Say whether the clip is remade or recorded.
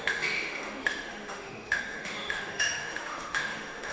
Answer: remade